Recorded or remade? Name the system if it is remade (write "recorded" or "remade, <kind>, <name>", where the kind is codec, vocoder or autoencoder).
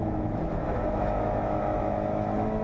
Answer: remade, autoencoder, DAC-VAE